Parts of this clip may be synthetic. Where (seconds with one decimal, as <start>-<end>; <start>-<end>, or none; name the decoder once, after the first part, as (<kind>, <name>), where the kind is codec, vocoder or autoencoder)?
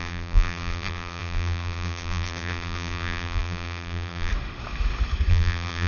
0.0-4.3 (vocoder, BigVGAN v2); 5.3-5.9